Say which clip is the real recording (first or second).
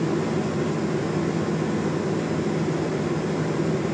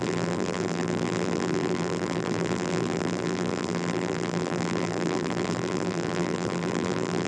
first